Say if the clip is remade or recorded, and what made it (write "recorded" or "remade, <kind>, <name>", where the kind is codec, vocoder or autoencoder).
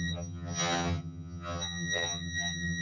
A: remade, vocoder, HiFi-GAN